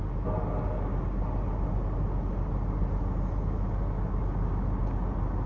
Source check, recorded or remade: recorded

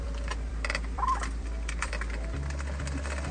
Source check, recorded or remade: recorded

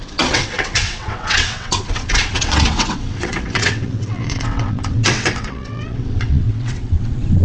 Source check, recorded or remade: remade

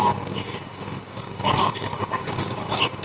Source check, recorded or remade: remade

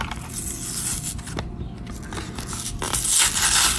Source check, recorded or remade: recorded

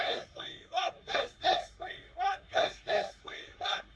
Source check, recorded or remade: remade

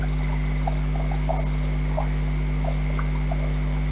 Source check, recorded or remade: recorded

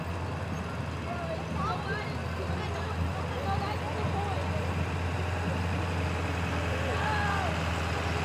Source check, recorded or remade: recorded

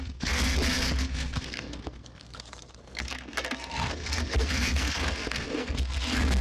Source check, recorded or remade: remade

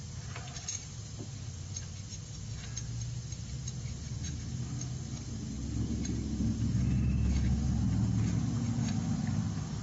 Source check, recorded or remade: recorded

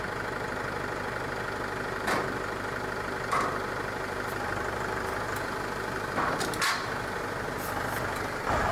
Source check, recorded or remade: recorded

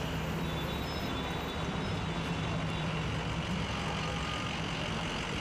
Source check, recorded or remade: recorded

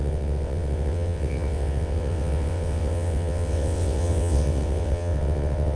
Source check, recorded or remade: remade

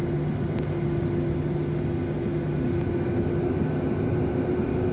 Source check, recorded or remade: recorded